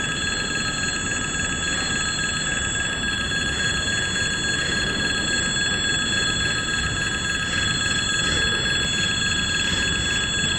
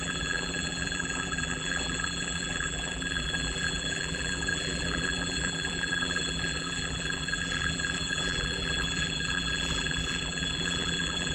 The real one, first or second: first